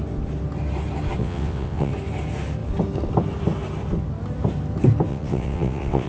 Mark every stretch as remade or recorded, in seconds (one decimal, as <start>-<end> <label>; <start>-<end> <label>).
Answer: 0.0-1.2 recorded; 1.2-1.9 remade; 1.9-5.1 recorded; 5.1-6.1 remade